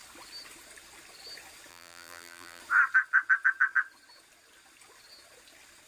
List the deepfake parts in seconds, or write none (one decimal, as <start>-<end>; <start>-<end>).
1.7-2.6